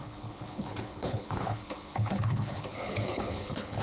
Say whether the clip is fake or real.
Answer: fake